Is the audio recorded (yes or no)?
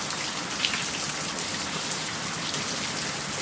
yes